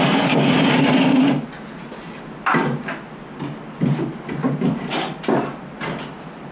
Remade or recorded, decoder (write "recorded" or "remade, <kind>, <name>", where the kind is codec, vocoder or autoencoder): recorded